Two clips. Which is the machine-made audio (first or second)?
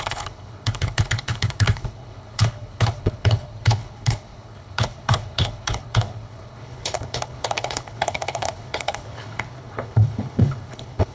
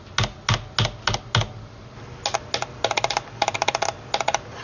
first